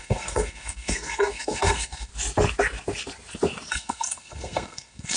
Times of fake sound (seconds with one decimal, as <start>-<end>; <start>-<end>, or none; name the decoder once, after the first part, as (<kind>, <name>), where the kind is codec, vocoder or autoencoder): 0.0-2.1 (codec, SNAC); 3.7-5.2